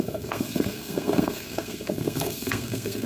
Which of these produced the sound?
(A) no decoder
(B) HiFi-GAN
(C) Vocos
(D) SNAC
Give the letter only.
D